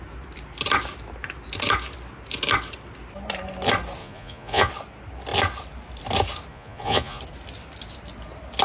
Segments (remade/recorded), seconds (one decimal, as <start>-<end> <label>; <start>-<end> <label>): 0.0-4.0 recorded; 4.0-4.7 remade; 4.7-6.5 recorded; 6.5-7.2 remade; 7.2-8.6 recorded